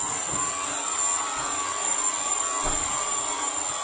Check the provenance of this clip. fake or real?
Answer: real